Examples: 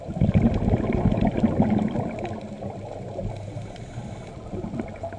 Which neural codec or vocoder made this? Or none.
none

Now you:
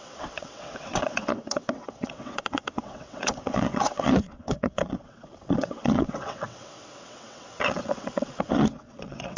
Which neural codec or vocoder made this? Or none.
vocoder, WaveNeXt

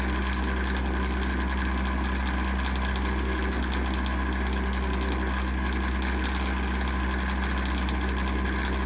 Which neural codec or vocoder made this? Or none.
none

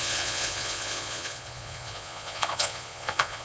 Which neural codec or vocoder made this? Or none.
vocoder, Vocos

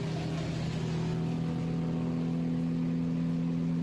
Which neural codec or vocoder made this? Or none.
none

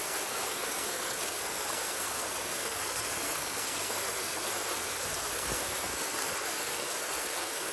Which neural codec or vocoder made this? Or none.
codec, SNAC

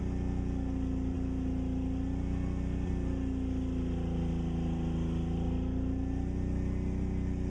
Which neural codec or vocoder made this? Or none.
none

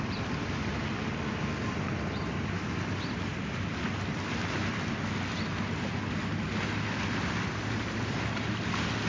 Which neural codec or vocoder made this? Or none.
none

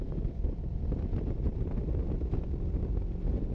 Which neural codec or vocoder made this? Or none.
none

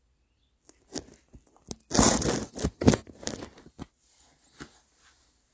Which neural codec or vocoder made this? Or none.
none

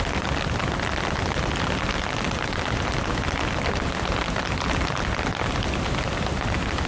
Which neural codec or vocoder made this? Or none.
none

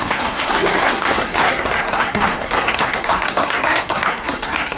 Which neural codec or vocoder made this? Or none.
codec, SNAC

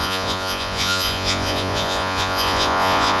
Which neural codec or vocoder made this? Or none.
vocoder, Vocos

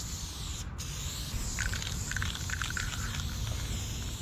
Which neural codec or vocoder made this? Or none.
none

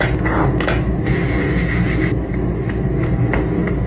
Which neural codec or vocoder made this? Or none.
none